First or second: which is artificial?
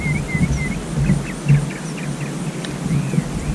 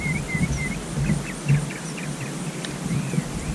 second